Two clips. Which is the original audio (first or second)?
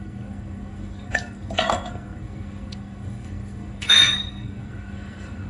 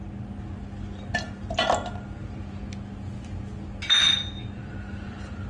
second